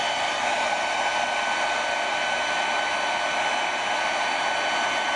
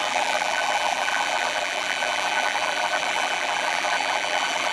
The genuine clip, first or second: first